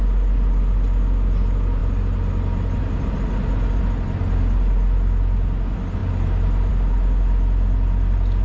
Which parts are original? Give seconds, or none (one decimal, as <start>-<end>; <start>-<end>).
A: 0.0-8.4